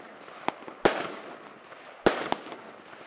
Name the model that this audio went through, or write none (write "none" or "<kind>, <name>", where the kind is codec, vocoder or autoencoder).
none